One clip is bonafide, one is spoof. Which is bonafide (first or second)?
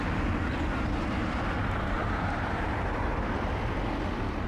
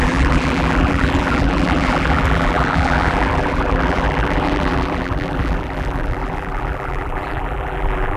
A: first